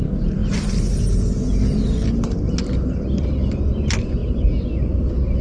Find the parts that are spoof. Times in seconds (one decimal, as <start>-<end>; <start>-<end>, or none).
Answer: none